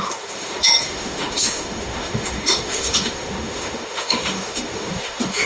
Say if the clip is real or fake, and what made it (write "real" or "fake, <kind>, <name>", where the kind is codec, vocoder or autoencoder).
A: fake, autoencoder, DAC-VAE